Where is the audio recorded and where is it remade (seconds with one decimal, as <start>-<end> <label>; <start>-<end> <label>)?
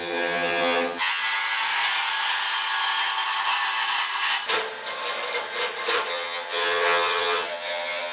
0.0-1.2 remade; 1.2-6.1 recorded; 6.1-8.1 remade